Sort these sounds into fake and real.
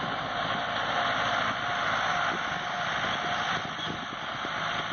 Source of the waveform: real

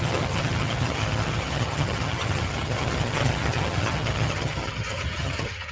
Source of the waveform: fake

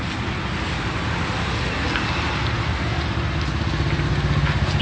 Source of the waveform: real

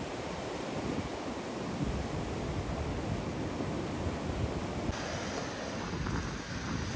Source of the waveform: real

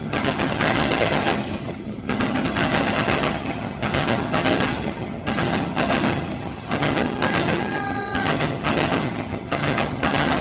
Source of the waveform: fake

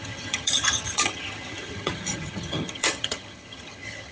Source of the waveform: fake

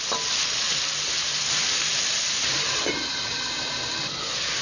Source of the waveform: real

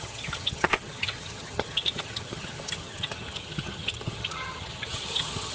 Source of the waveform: fake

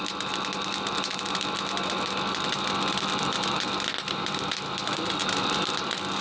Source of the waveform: real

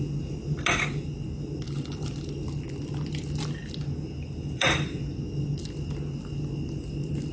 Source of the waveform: real